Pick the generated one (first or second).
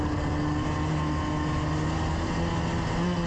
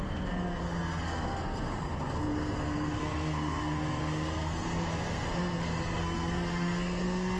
second